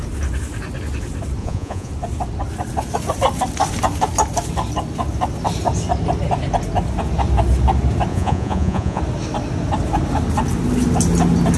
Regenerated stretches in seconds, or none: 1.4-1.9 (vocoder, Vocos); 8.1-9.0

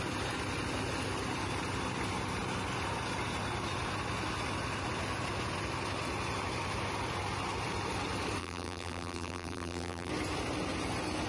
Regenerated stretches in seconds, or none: 8.4-10.1 (vocoder, BigVGAN v2)